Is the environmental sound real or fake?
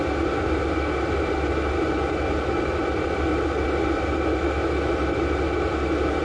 real